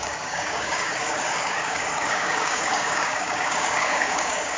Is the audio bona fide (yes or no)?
no